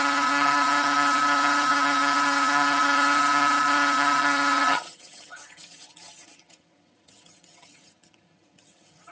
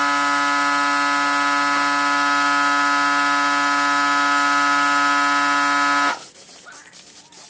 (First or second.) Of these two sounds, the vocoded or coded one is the first